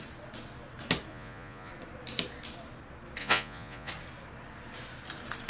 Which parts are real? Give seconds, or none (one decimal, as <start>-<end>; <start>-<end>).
0.0-1.1; 1.7-3.2; 3.9-5.5